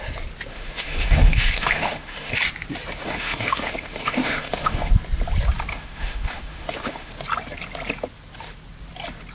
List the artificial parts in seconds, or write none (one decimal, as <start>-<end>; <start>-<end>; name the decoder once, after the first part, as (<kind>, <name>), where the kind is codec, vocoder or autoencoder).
0.5-2.3 (autoencoder, DAC-VAE); 3.0-4.9; 5.7-7.1